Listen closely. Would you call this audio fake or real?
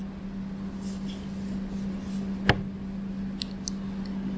real